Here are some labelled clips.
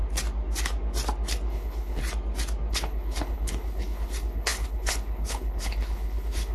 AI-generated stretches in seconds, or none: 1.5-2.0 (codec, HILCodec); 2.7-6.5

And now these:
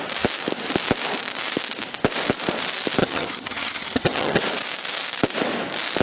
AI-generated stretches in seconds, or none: 3.0-4.4 (vocoder, HiFi-GAN)

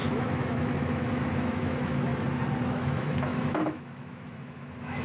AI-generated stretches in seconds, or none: 0.0-2.1 (autoencoder, DAC-VAE); 2.7-5.0

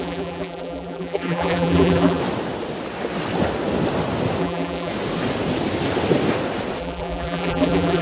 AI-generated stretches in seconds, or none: 0.0-2.2 (vocoder, BigVGAN v2); 4.4-4.9; 6.8-8.0

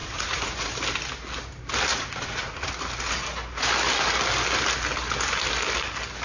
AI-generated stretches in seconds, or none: 0.0-0.7 (vocoder, Vocos); 1.9-2.7

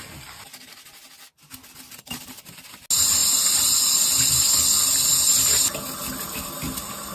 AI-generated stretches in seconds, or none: none